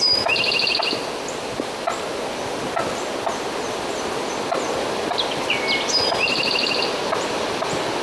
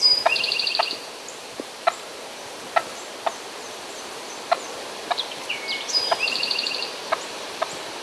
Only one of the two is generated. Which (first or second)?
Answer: second